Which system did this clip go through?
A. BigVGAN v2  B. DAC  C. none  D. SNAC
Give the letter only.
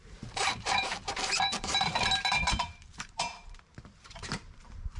A